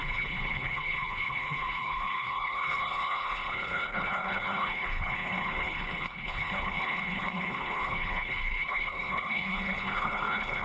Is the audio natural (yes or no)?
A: no